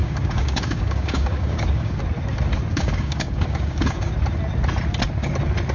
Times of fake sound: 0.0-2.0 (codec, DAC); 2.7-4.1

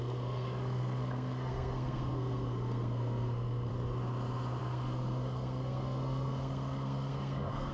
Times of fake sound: 0.0-3.7 (codec, SNAC); 4.6-7.7